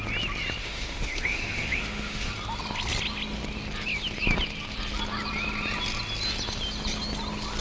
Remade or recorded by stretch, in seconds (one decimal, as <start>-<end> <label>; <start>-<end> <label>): 0.0-0.6 recorded; 0.6-2.3 remade; 2.3-7.6 recorded